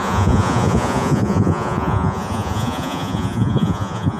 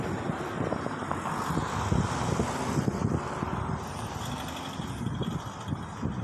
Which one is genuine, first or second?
second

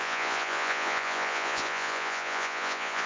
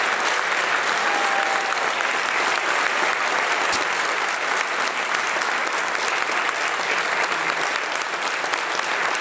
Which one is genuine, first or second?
second